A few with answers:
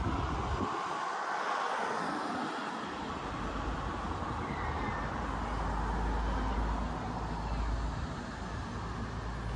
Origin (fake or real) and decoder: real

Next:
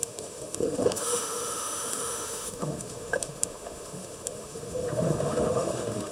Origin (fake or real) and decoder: fake, autoencoder, DAC-VAE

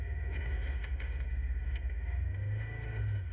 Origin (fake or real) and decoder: fake, autoencoder, DAC-VAE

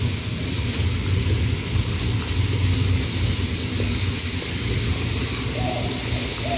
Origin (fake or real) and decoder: real